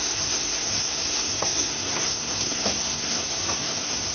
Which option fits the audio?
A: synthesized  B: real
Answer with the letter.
A